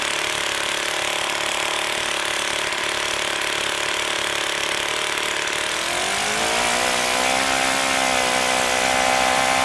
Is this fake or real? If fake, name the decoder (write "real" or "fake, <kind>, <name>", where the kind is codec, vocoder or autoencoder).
real